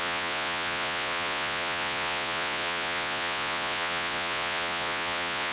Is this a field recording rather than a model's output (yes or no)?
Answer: no